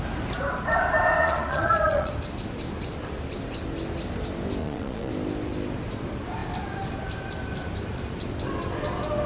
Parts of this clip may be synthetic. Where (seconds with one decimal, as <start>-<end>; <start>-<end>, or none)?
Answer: 1.2-2.1; 4.6-5.1